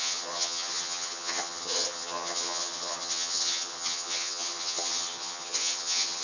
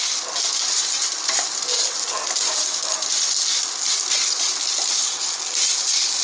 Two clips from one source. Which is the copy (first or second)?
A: first